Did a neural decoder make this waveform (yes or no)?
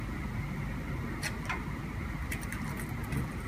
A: no